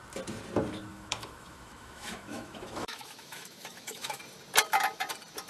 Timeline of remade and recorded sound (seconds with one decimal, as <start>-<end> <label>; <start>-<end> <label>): 0.0-0.9 recorded; 0.9-4.2 remade; 4.2-5.5 recorded